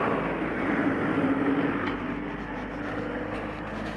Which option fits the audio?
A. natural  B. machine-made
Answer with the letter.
A